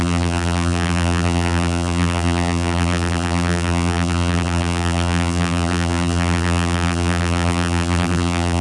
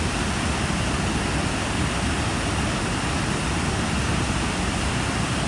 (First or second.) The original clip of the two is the second